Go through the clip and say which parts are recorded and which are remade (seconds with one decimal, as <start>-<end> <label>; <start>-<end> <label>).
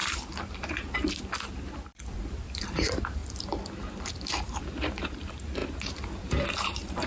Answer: 0.0-3.2 remade; 3.2-4.1 recorded; 4.1-7.1 remade